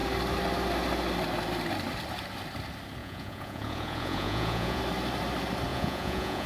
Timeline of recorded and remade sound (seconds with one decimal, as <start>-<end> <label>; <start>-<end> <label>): 0.0-3.0 recorded; 3.0-4.8 remade; 4.8-5.7 recorded; 5.7-6.5 remade